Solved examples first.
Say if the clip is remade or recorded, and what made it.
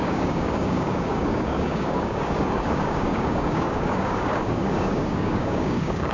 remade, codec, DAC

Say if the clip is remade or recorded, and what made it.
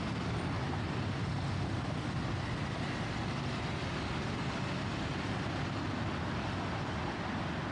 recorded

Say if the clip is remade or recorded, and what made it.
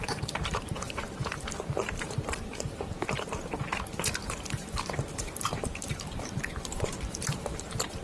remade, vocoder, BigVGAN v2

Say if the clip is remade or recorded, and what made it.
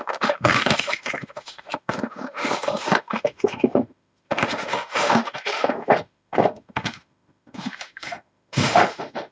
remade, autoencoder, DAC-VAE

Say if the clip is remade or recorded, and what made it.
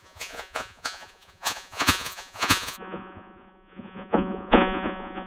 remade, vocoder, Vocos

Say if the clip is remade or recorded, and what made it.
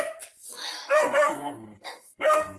remade, codec, SNAC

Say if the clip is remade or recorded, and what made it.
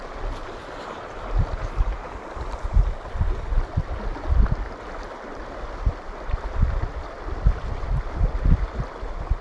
recorded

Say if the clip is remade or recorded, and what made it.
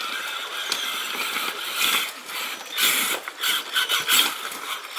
recorded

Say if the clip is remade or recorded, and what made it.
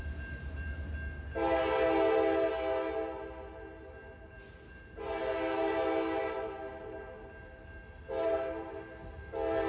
recorded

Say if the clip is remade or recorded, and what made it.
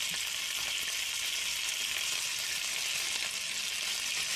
recorded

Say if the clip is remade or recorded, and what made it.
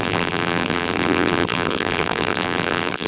remade, vocoder, BigVGAN v2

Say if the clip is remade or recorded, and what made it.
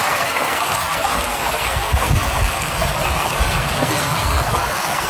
remade, codec, SNAC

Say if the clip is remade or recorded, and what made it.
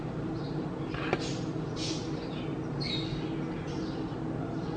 recorded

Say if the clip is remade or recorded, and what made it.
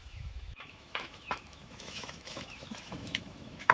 remade, autoencoder, DAC-VAE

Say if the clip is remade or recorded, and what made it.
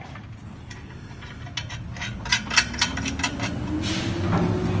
recorded